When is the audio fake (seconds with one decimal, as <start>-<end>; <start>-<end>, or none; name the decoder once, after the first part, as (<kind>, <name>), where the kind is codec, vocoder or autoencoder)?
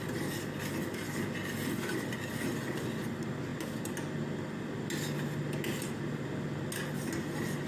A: none